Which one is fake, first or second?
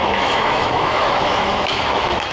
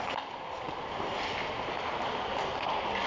first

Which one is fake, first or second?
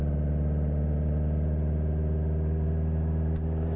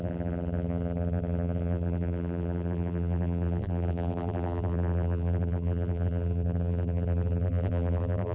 second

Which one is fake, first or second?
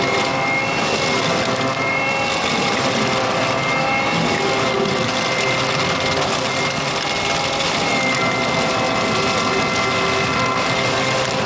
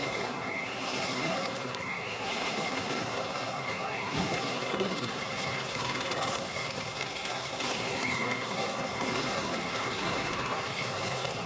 second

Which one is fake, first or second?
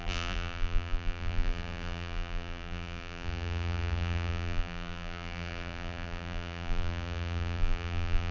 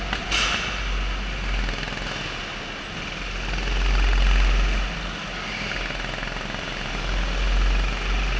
first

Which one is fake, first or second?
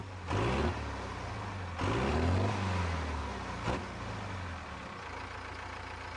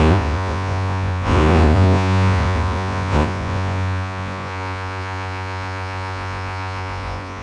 second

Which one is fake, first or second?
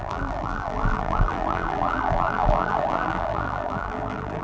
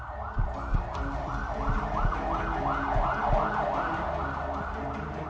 first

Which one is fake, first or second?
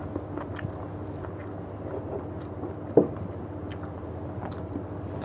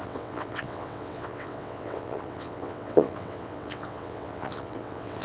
second